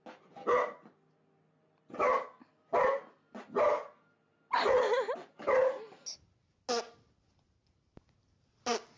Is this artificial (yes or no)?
no